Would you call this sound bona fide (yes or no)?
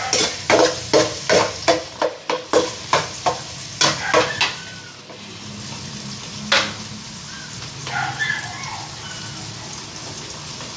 yes